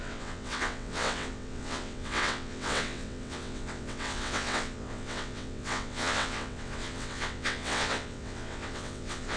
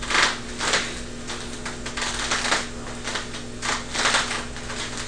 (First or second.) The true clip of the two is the second